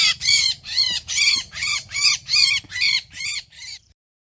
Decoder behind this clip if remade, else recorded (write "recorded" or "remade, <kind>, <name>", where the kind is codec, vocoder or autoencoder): remade, vocoder, BigVGAN v2